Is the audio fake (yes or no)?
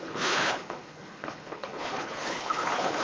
yes